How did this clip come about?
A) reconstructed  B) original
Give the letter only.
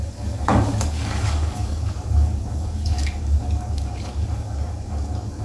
A